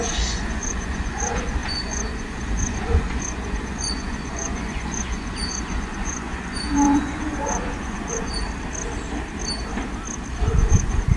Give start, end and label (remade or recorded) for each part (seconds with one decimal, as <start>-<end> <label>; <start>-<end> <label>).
0.0-8.4 remade; 8.4-10.3 recorded; 10.3-11.2 remade